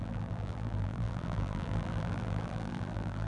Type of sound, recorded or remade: remade